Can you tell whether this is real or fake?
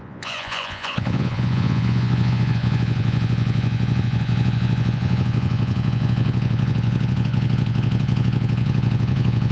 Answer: fake